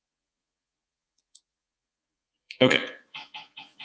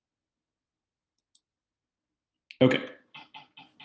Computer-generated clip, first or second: first